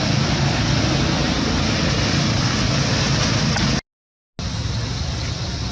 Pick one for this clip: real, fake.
real